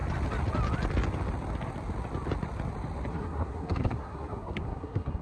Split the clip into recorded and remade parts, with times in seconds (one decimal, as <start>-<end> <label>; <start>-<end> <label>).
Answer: 0.0-3.1 recorded; 3.1-5.2 remade